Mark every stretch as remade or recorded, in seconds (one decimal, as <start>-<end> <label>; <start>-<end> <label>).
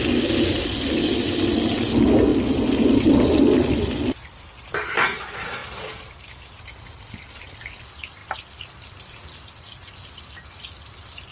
0.0-2.3 recorded; 2.3-5.0 remade; 5.0-8.2 recorded; 8.2-9.2 remade; 9.2-11.3 recorded